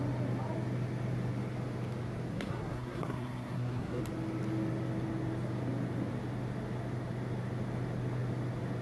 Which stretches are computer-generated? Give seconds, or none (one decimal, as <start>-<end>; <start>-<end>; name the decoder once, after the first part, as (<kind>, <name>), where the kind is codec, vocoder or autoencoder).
2.3-4.0 (codec, SNAC)

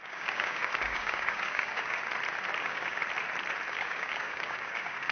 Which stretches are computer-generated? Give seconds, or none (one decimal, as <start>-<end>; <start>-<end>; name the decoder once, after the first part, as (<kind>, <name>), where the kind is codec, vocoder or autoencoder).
0.0-2.0 (codec, DAC); 2.6-3.0; 3.7-5.1